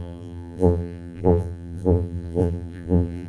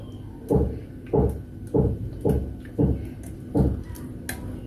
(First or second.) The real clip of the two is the second